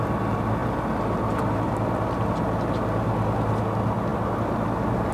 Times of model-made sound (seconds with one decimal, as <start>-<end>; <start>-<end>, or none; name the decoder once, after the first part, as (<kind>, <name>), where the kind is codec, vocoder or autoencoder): none